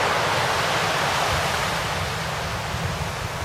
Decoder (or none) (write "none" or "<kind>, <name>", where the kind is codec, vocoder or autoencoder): none